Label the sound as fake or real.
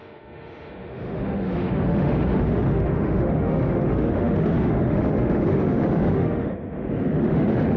fake